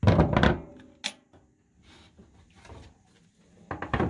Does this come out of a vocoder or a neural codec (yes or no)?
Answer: no